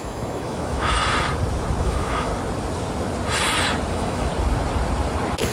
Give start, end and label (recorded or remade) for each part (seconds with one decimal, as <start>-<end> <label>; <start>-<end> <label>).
0.0-1.0 remade; 1.0-1.8 recorded; 1.8-2.3 remade; 2.3-3.9 recorded; 3.9-4.3 remade; 4.3-5.5 recorded